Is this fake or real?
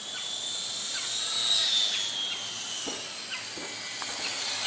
real